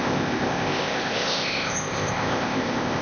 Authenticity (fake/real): fake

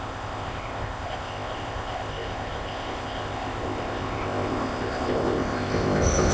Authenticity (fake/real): fake